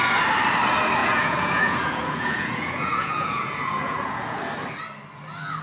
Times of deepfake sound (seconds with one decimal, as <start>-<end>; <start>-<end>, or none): 1.0-4.4